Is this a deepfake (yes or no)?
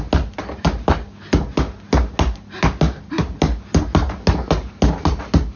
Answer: no